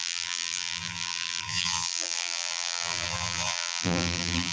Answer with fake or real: fake